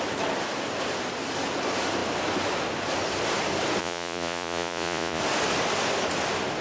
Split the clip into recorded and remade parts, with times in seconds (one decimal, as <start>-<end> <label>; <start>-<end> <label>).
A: 0.0-3.8 recorded; 3.8-5.2 remade; 5.2-6.6 recorded